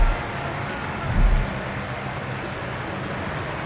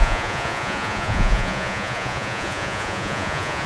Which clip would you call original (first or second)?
first